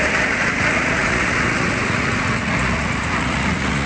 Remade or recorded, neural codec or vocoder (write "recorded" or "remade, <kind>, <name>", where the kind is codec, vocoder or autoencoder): remade, vocoder, Vocos